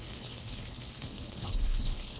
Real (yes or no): no